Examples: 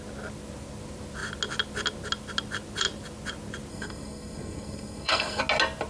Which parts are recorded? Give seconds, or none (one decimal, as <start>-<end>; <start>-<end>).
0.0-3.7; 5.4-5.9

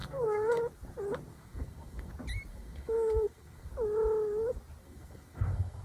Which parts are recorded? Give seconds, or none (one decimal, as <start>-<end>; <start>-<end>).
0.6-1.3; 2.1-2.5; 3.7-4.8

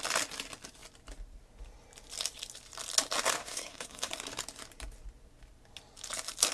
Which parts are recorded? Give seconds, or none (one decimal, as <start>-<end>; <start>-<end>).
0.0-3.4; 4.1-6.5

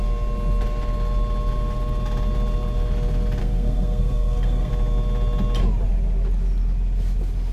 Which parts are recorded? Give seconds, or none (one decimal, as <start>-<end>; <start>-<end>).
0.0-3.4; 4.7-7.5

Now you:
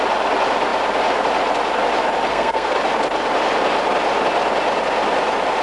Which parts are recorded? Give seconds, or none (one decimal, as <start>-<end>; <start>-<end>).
0.0-2.3; 2.8-5.6

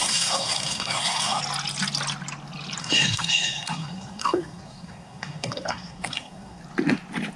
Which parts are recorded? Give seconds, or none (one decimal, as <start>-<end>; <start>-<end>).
1.4-2.8; 6.6-7.4

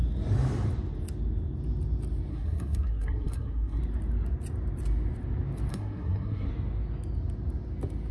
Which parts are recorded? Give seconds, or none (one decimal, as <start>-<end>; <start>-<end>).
0.0-2.3; 3.8-5.7; 6.5-8.1

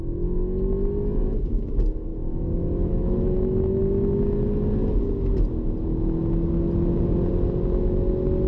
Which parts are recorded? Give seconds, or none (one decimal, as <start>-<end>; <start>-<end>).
0.0-8.5